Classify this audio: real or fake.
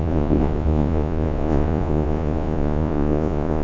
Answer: fake